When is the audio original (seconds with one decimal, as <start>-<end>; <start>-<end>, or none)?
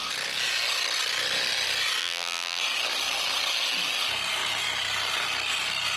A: 0.0-2.0; 2.6-6.0